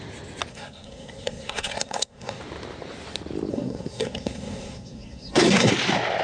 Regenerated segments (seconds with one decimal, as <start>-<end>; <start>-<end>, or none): 0.5-2.4; 3.5-5.7